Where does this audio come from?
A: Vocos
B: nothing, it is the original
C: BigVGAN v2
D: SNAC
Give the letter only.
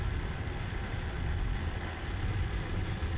C